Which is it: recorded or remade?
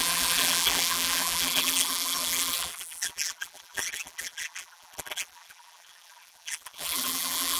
remade